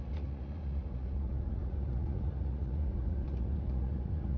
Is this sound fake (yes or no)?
yes